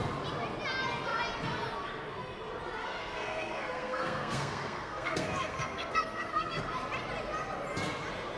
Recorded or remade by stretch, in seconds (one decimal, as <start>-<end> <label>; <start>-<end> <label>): 0.0-2.8 recorded; 2.8-6.6 remade; 6.6-8.4 recorded